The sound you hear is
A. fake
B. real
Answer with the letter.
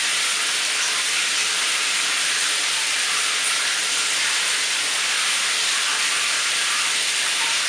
B